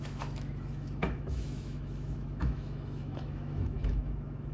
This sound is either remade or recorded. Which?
remade